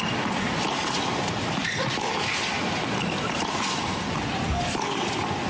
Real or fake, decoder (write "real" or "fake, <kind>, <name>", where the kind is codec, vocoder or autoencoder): real